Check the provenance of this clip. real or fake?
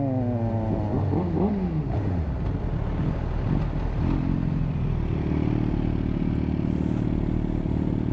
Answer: real